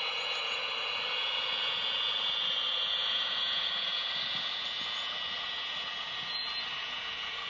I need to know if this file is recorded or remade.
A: remade